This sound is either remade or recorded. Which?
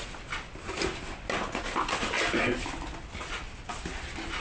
recorded